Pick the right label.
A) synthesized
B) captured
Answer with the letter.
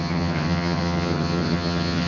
A